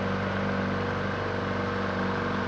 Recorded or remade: recorded